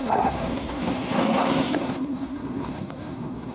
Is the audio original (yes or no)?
no